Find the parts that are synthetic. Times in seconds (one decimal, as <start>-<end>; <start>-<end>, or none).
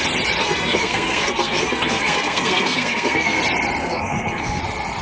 0.4-3.4; 3.8-4.6